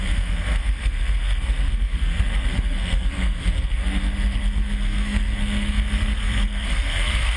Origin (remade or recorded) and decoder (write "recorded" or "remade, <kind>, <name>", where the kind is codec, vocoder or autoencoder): remade, codec, SNAC